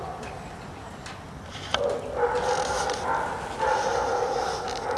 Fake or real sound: real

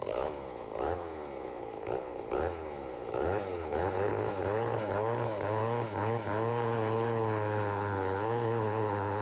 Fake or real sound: fake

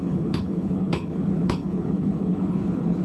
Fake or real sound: fake